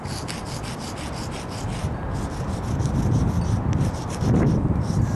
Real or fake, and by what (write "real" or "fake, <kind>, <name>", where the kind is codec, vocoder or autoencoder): real